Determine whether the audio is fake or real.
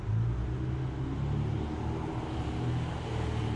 real